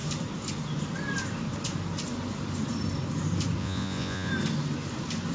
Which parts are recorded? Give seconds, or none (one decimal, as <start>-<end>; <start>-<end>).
0.0-3.6; 4.3-5.3